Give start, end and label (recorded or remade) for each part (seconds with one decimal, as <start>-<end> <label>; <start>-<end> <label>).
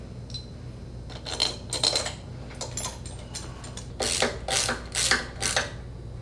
0.0-6.2 recorded